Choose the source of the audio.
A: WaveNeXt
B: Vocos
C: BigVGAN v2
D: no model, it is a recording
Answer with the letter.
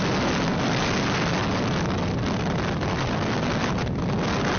D